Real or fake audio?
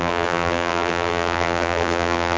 fake